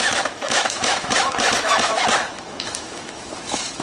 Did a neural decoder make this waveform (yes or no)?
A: yes